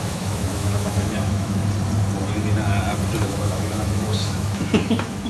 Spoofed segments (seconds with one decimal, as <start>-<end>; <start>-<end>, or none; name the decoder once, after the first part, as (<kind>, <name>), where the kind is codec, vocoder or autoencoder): 0.0-1.6 (autoencoder, DAC-VAE); 3.2-5.3